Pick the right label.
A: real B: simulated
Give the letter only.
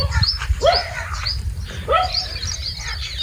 B